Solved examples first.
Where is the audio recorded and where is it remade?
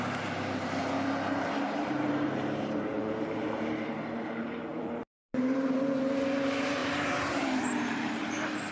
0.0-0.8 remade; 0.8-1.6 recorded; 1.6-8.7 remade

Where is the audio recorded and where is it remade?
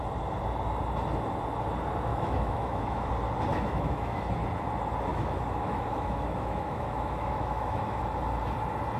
0.0-2.1 recorded; 2.1-3.1 remade; 3.1-3.5 recorded; 3.5-4.2 remade; 4.2-5.1 recorded; 5.1-8.0 remade; 8.0-9.0 recorded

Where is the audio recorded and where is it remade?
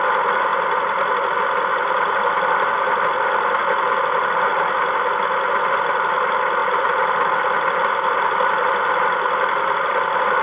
0.0-10.4 recorded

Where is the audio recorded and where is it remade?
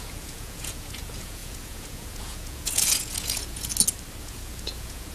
0.0-3.7 remade; 3.7-4.2 recorded; 4.2-5.1 remade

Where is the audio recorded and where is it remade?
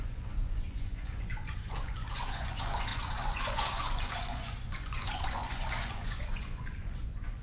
0.0-7.4 remade